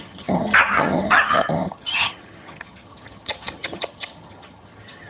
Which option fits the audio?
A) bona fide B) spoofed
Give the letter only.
B